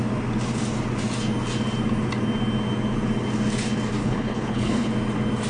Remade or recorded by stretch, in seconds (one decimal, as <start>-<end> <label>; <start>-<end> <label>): 0.0-4.0 recorded; 4.0-4.9 remade; 4.9-5.5 recorded